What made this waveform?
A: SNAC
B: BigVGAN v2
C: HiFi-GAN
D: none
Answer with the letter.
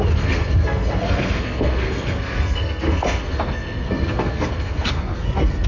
A